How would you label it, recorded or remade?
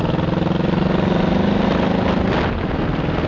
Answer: recorded